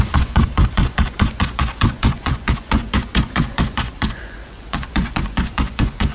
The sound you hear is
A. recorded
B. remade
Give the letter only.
B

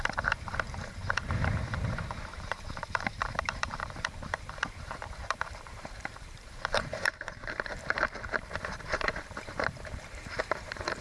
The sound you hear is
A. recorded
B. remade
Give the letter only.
B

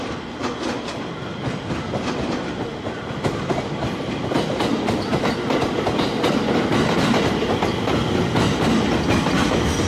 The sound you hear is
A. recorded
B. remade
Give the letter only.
A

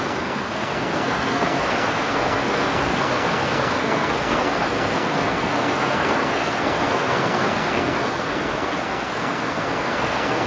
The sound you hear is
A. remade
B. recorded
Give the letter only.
A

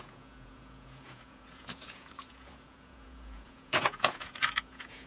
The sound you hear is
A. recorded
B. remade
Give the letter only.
B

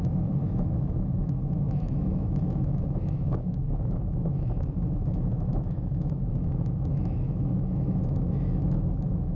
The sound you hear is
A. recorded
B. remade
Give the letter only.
B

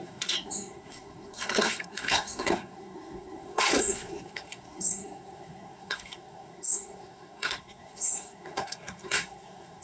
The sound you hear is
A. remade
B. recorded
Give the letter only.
A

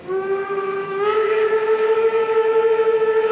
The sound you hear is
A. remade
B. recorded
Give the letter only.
A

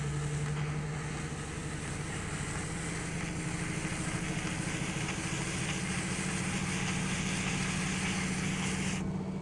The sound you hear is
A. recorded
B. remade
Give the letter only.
A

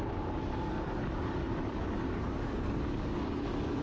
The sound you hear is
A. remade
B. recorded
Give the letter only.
A